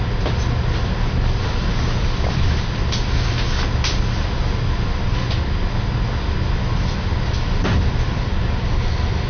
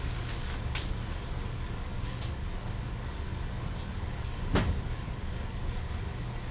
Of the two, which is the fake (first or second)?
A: second